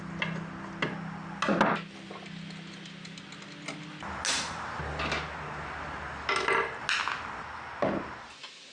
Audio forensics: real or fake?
real